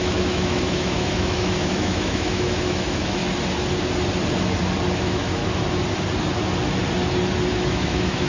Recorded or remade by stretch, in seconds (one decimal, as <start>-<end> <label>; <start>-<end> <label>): 0.0-3.2 remade; 3.2-5.0 recorded; 5.0-5.4 remade; 5.4-7.5 recorded; 7.5-8.3 remade